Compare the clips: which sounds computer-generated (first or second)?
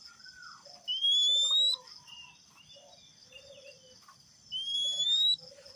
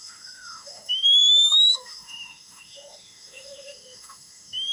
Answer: second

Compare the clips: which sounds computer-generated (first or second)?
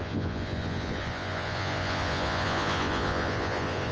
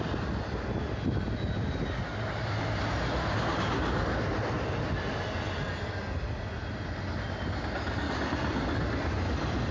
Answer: first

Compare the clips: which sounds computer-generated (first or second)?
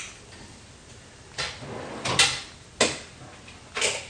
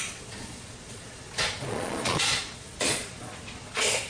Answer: second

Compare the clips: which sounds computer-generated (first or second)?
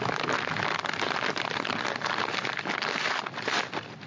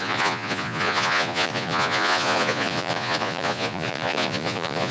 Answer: second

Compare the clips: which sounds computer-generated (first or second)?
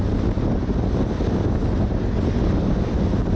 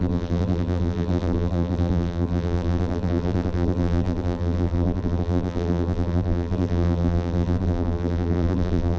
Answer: second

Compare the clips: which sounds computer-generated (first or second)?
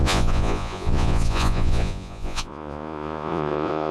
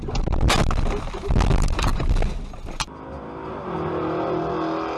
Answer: first